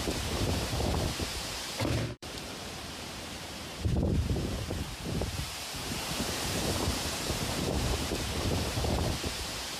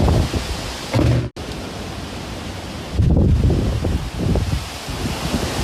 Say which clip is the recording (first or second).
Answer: second